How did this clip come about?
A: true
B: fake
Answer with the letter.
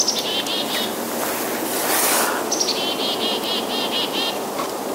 A